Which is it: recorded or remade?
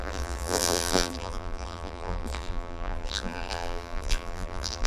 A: remade